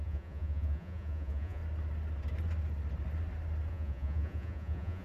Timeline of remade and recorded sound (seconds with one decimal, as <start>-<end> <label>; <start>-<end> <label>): 0.0-1.6 remade; 1.6-3.7 recorded; 3.7-5.0 remade